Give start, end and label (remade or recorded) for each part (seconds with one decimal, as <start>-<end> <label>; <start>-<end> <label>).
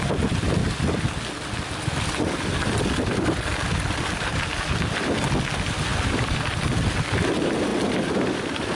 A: 0.0-5.9 recorded; 5.9-6.4 remade; 6.4-7.7 recorded; 7.7-8.7 remade